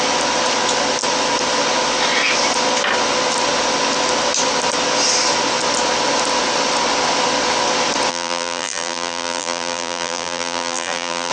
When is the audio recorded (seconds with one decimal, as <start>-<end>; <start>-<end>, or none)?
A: 0.0-8.1